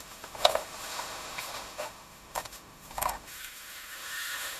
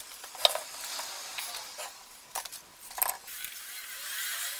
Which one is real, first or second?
second